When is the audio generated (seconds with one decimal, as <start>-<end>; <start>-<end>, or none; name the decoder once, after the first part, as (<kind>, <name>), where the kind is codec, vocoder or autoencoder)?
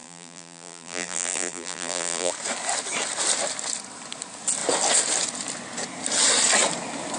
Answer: 0.0-2.3 (vocoder, BigVGAN v2)